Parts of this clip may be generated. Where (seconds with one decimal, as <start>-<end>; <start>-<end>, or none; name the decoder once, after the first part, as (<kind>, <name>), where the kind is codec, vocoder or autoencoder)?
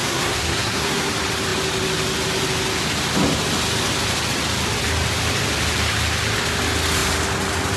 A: 0.0-1.1 (codec, SNAC)